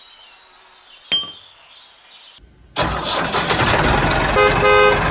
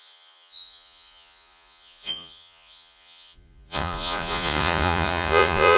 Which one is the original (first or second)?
first